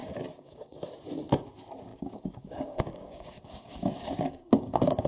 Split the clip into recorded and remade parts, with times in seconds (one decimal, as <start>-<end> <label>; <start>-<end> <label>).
0.0-0.9 remade; 0.9-1.9 recorded; 1.9-5.1 remade